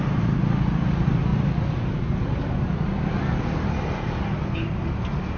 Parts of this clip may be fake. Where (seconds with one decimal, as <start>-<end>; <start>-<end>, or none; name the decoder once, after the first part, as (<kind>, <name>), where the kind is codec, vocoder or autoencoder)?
none